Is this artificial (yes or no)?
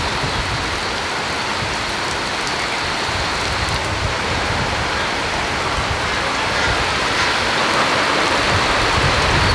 no